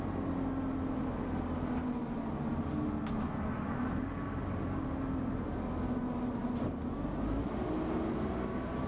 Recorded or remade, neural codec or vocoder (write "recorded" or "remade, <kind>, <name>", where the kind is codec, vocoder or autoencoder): recorded